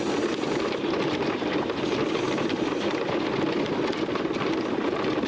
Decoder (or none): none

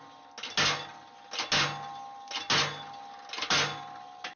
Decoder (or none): none